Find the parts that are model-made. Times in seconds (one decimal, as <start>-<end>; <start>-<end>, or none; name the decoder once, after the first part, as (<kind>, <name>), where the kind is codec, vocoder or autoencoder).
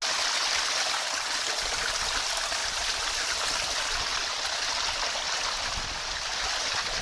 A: none